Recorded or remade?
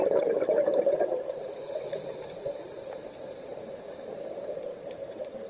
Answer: remade